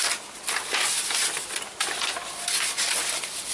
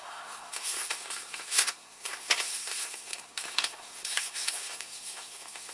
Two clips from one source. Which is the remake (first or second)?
second